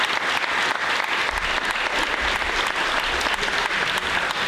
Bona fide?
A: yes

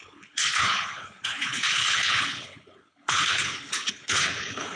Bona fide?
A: no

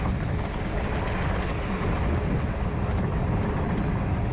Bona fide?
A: yes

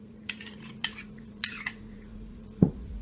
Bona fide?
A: no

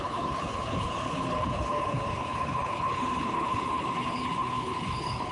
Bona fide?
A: no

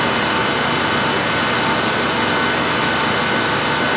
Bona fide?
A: yes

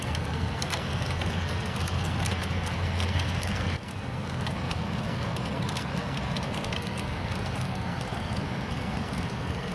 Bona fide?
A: no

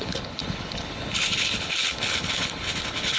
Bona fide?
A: no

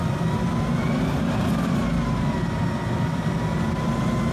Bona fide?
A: yes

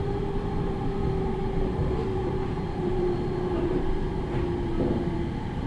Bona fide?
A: no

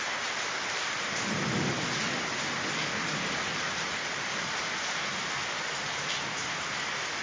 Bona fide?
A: yes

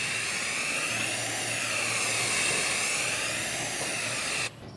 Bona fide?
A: yes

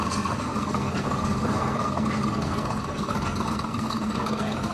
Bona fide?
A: no